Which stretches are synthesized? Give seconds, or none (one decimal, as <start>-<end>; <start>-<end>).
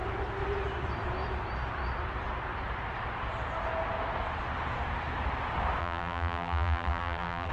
5.8-7.5